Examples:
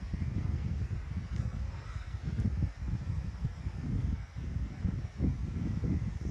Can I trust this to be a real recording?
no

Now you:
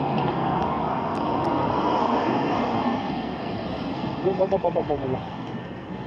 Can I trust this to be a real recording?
no